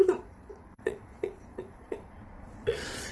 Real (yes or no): no